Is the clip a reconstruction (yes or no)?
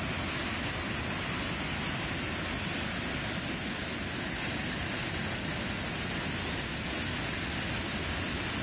no